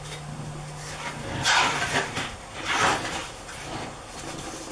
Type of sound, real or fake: real